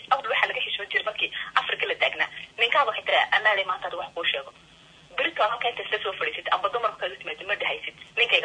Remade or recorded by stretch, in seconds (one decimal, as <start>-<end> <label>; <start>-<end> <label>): 0.0-8.4 remade